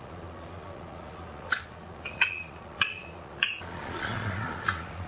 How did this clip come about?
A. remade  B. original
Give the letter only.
A